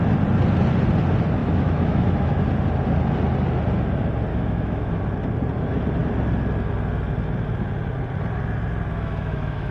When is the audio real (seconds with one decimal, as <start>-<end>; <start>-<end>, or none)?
0.0-1.4; 2.4-4.3; 5.0-8.9